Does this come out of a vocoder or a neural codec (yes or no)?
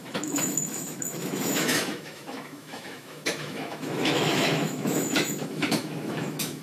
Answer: yes